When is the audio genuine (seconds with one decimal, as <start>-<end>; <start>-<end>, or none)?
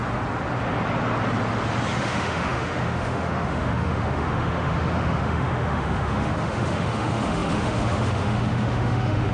0.0-2.0